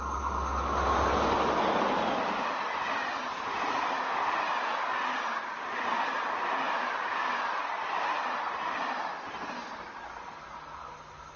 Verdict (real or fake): real